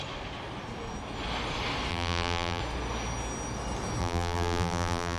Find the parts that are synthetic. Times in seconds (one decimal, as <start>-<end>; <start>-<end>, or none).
1.9-2.6; 4.0-5.2